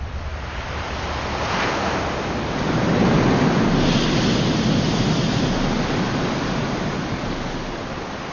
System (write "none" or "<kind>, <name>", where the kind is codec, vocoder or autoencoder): none